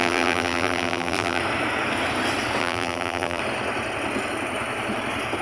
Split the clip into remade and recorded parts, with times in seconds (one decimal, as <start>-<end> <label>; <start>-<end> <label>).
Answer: 0.0-1.4 remade; 1.4-2.6 recorded; 2.6-3.4 remade; 3.4-5.4 recorded

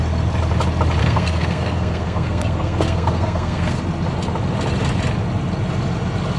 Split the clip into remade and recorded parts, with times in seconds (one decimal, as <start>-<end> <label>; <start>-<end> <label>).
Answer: 0.0-1.0 recorded; 1.0-3.8 remade; 3.8-6.4 recorded

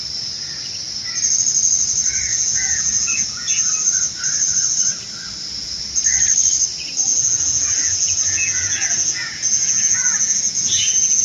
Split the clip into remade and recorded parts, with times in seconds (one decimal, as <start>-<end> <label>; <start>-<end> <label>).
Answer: 0.0-2.3 recorded; 2.3-3.7 remade; 3.7-7.1 recorded; 7.1-11.2 remade

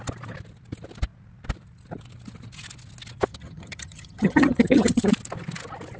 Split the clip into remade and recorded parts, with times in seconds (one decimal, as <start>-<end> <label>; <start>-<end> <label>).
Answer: 0.0-3.3 recorded; 3.3-5.1 remade; 5.1-6.0 recorded

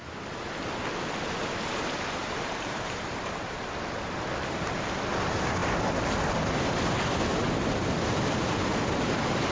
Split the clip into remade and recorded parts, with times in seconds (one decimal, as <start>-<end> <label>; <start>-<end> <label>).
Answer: 0.0-2.2 recorded; 2.2-3.6 remade; 3.6-9.5 recorded

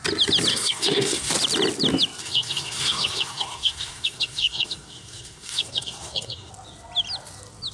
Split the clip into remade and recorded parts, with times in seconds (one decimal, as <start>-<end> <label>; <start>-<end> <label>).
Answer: 0.0-0.5 recorded; 0.5-1.3 remade; 1.3-2.2 recorded; 2.2-6.5 remade; 6.5-7.7 recorded

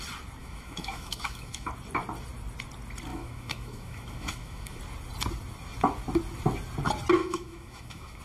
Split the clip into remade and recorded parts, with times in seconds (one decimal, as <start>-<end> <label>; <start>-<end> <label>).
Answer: 0.0-0.4 recorded; 0.4-1.7 remade; 1.7-3.1 recorded; 3.1-4.8 remade; 4.8-7.2 recorded; 7.2-8.2 remade

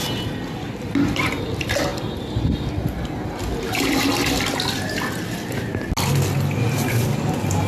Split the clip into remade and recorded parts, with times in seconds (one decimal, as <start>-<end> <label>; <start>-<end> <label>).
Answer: 0.0-7.7 recorded